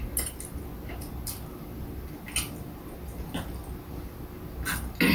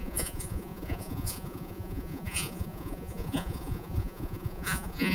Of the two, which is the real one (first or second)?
first